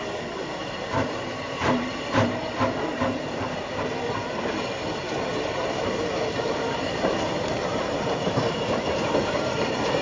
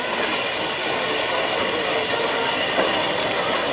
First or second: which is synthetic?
first